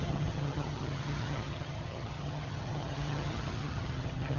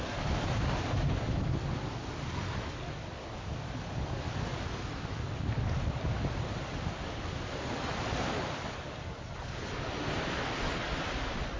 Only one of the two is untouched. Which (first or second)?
second